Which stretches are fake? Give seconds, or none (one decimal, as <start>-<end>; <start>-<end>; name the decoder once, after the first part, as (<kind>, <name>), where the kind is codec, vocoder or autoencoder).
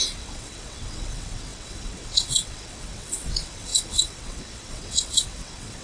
0.0-5.8 (vocoder, WaveNeXt)